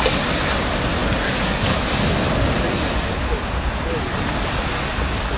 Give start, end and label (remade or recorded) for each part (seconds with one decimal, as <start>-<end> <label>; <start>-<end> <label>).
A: 0.0-5.4 recorded